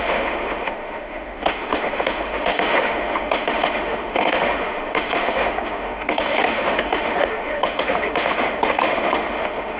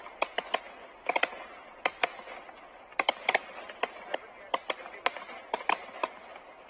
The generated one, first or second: first